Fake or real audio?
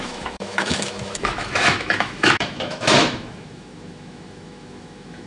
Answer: fake